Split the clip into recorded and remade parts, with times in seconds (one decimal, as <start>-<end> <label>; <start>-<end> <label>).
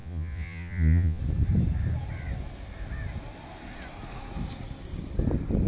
0.0-1.2 remade; 1.2-5.7 recorded